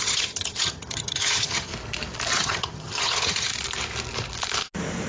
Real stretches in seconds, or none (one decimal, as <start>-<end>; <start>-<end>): 1.7-2.3; 3.5-5.1